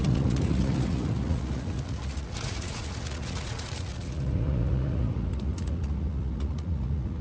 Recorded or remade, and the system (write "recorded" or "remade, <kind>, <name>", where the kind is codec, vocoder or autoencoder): remade, vocoder, Vocos